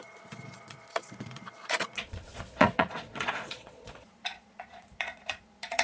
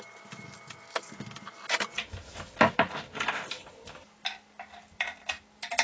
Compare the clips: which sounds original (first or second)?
second